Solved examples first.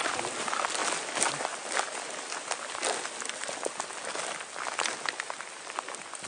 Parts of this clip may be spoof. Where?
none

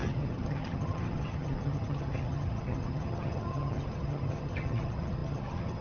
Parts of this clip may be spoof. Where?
0.0-5.8 (vocoder, HiFi-GAN)

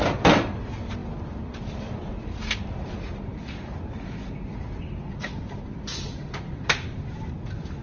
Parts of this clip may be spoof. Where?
0.0-3.3 (vocoder, BigVGAN v2); 5.2-5.9; 6.4-7.8

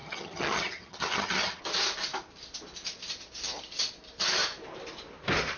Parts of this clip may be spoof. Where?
0.0-1.6 (vocoder, HiFi-GAN)

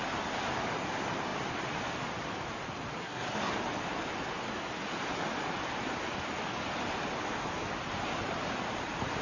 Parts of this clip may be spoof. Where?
3.0-3.5 (codec, SNAC)

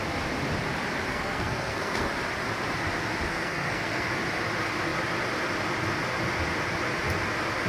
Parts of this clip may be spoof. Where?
1.1-2.1 (codec, SNAC); 3.3-4.1

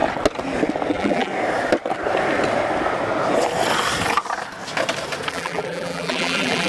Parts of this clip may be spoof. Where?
0.9-1.3 (vocoder, BigVGAN v2); 5.3-6.7

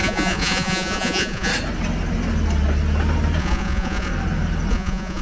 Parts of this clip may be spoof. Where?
0.0-1.5 (vocoder, Vocos); 3.4-4.1; 4.7-5.2